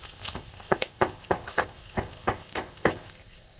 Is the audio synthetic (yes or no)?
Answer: yes